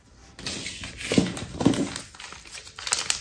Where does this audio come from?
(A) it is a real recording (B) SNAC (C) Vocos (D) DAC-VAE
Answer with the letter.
A